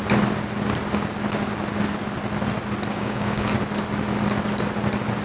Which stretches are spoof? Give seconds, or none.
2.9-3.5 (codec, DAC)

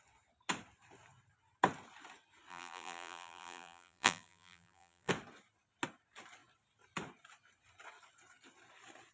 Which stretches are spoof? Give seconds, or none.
2.5-5.1 (vocoder, BigVGAN v2)